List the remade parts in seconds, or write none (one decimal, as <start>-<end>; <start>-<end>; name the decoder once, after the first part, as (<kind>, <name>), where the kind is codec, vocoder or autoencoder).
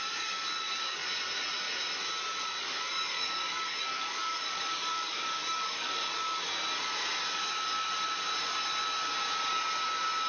0.0-1.0 (codec, DAC); 2.6-6.0